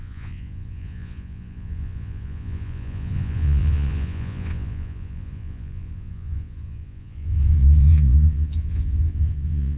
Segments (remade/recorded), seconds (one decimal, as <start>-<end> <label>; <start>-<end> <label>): 0.0-9.8 remade